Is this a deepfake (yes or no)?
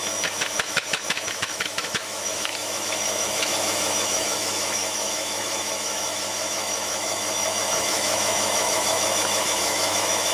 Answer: yes